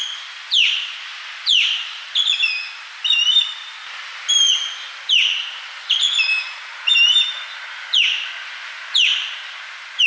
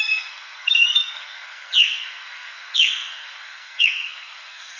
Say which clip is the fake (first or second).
second